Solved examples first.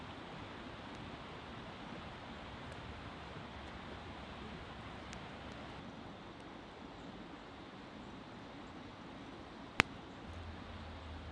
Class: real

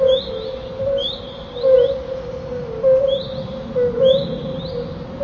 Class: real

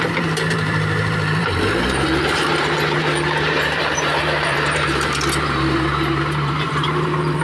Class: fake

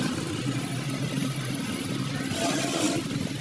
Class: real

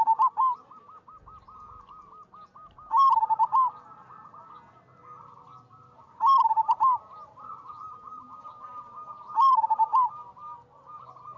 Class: real